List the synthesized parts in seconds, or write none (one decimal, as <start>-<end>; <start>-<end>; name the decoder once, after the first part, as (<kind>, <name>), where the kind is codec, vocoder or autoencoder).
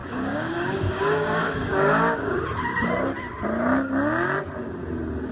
0.0-2.3 (codec, DAC)